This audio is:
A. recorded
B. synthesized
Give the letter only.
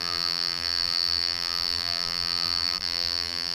B